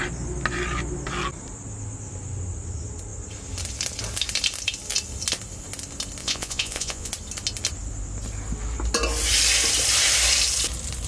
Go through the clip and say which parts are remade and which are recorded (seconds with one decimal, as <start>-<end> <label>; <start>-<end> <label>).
0.0-6.2 recorded; 6.2-7.1 remade; 7.1-11.1 recorded